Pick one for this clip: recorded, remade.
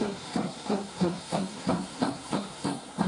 remade